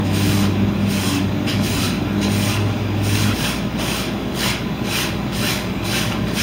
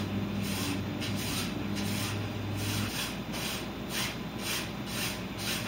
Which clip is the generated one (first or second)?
first